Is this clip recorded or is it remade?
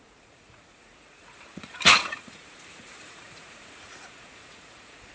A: remade